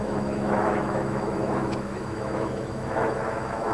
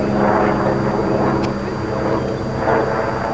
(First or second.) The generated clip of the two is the first